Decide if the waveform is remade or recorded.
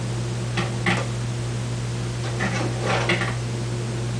recorded